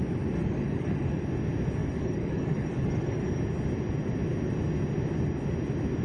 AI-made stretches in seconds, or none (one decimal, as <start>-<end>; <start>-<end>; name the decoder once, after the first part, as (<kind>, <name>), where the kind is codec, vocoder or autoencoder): 0.4-1.1 (codec, DAC); 1.8-3.4